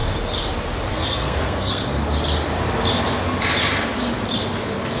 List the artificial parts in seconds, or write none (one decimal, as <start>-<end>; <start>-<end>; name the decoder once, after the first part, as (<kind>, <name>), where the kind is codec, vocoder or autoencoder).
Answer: 0.9-1.8 (codec, SNAC)